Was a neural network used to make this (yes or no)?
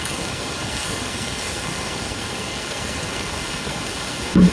yes